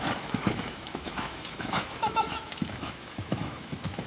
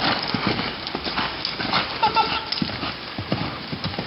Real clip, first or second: second